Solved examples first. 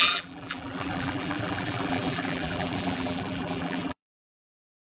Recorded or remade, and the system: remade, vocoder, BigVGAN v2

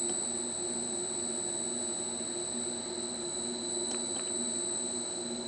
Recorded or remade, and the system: recorded